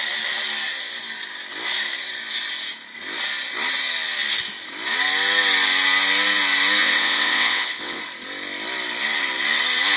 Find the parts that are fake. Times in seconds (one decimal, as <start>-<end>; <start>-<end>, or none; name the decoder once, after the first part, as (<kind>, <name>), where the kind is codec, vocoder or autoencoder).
6.8-8.0 (vocoder, WaveNeXt)